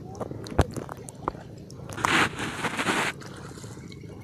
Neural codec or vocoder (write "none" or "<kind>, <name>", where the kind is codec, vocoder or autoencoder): none